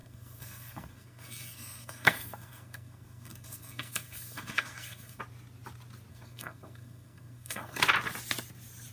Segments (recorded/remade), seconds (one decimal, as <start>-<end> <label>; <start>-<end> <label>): 0.0-5.2 remade; 5.2-6.1 recorded; 6.1-7.8 remade; 7.8-8.9 recorded